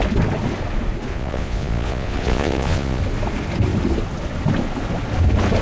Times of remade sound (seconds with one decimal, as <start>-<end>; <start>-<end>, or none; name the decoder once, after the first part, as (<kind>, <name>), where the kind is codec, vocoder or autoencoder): 1.1-3.0 (vocoder, Vocos)